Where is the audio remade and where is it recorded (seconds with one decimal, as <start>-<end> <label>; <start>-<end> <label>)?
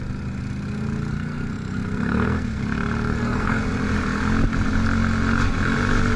0.0-1.1 recorded; 1.1-2.6 remade; 2.6-3.1 recorded; 3.1-3.6 remade; 3.6-6.2 recorded